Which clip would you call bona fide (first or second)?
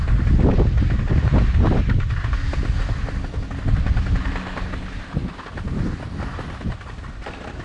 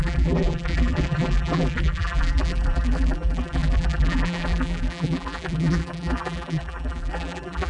first